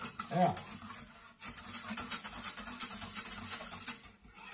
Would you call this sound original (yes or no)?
yes